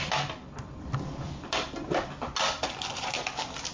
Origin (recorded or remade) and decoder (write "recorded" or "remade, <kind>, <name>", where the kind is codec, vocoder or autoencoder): recorded